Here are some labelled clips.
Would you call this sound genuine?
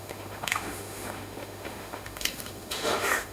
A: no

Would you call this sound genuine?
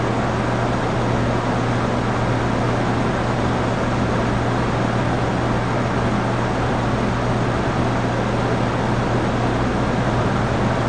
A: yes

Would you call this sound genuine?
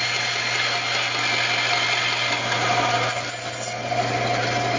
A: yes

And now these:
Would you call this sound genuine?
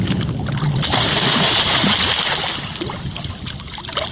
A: yes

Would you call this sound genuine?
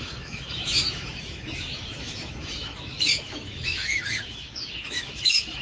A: no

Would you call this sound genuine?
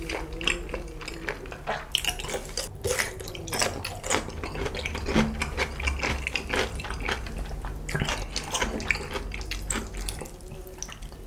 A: yes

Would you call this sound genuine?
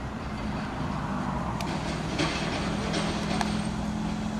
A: yes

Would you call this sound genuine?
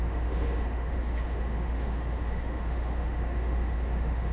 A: no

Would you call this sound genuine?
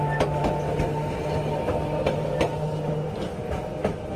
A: yes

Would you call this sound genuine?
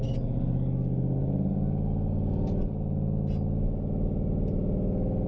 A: yes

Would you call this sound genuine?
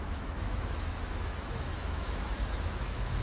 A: no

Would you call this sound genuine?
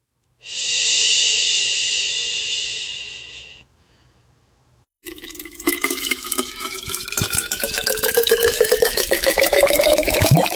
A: no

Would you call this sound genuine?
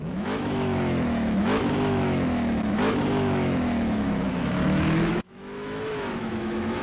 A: no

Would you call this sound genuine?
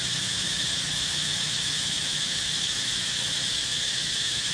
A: no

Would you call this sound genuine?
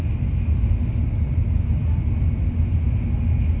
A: yes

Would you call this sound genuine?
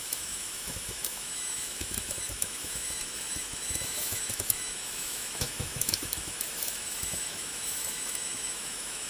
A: no